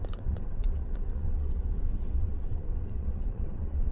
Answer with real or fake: fake